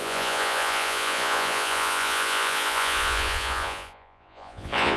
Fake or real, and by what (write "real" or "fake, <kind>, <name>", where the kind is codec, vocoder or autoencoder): fake, vocoder, Vocos